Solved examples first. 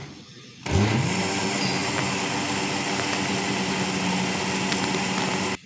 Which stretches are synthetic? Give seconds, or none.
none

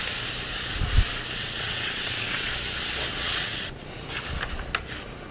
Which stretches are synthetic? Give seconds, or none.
1.4-2.5 (vocoder, WaveNeXt); 3.1-3.7

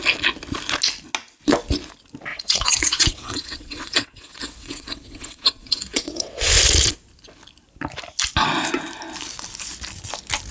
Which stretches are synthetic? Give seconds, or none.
2.3-6.5 (vocoder, WaveNeXt)

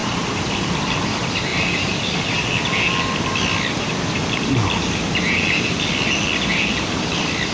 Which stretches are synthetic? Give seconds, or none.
none